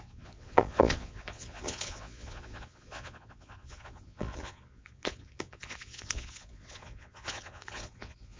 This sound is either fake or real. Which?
fake